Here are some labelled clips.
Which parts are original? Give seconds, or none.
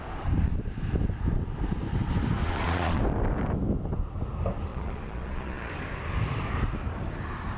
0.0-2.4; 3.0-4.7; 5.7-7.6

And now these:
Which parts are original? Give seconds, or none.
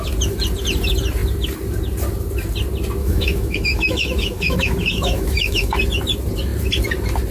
0.0-3.0; 5.7-7.3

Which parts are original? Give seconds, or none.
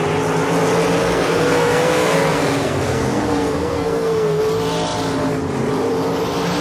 0.0-1.0; 4.4-6.6